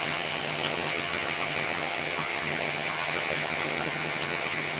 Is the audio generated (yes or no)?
yes